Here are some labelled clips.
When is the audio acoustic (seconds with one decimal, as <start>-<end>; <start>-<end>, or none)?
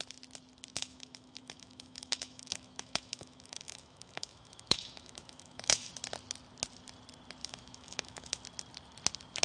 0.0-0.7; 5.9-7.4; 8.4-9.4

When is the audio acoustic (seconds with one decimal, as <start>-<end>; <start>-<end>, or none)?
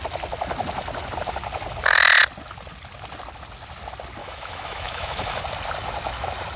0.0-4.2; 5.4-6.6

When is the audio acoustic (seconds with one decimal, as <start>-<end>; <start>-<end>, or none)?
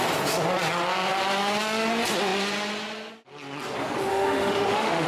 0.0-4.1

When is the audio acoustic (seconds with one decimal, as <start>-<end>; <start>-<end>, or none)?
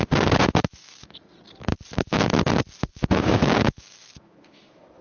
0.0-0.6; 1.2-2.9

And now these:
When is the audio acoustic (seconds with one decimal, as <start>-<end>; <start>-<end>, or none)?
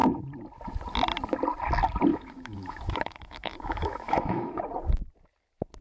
0.0-2.1; 4.6-5.8